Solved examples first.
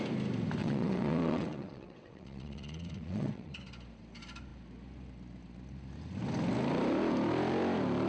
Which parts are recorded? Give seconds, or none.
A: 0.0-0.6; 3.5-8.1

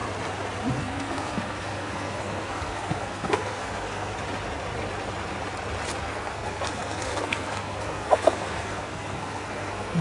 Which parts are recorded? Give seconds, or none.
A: 0.0-0.7; 4.1-6.0

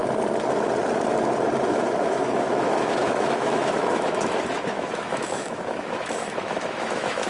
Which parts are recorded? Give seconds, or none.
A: 0.0-1.7

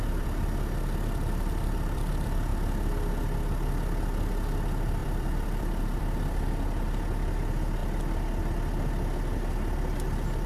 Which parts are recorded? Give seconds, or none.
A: 0.0-5.0; 6.0-10.5

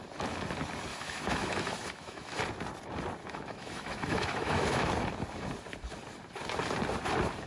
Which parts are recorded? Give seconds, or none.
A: 0.0-0.9; 2.4-3.2; 4.9-7.5